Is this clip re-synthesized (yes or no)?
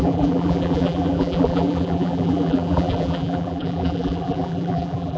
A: yes